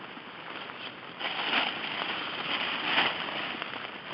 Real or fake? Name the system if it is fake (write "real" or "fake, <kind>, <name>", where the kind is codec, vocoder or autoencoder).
real